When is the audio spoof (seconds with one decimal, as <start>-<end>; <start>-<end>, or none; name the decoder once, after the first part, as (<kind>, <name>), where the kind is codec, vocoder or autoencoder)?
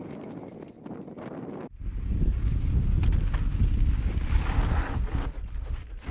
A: none